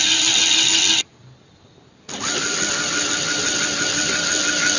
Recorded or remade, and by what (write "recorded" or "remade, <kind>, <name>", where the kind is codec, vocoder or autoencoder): recorded